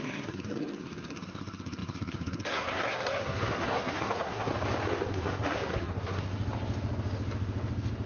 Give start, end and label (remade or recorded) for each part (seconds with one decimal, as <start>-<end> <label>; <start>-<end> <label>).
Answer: 0.0-4.5 remade; 4.5-5.1 recorded; 5.1-6.3 remade; 6.3-8.1 recorded